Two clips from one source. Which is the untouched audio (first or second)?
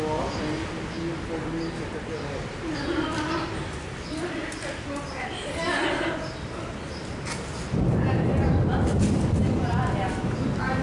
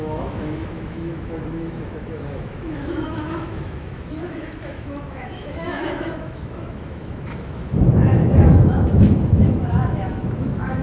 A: first